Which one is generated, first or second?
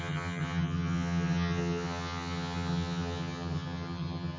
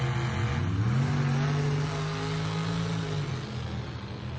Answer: first